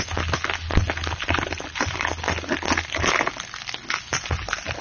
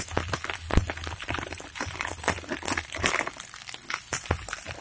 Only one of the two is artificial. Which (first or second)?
second